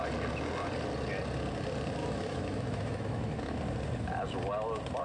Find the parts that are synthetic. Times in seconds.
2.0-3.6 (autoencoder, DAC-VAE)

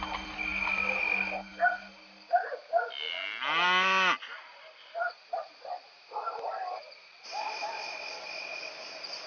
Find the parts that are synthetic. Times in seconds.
none

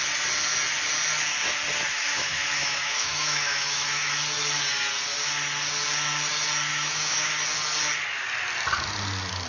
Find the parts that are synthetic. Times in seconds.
1.9-4.1 (autoencoder, DAC-VAE); 6.7-7.3

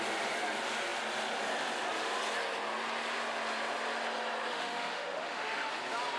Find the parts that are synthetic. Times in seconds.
4.5-5.7 (autoencoder, DAC-VAE)

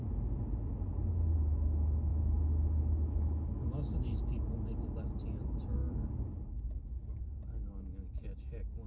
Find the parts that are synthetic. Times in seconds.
2.1-4.2 (autoencoder, DAC-VAE)